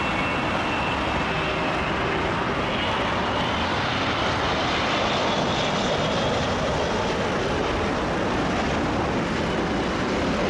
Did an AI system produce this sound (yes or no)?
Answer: no